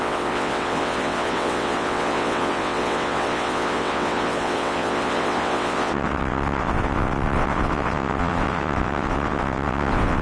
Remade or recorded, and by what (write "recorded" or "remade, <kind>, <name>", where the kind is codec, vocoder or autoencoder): remade, vocoder, WaveNeXt